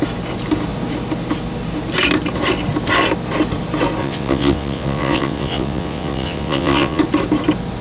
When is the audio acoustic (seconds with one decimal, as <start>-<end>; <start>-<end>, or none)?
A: 0.0-4.0; 7.0-7.8